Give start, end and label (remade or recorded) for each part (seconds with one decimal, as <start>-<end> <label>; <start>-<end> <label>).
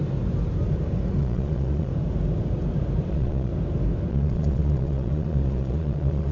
0.0-1.2 recorded; 1.2-1.9 remade; 1.9-3.1 recorded; 3.1-3.5 remade; 3.5-4.1 recorded; 4.1-6.3 remade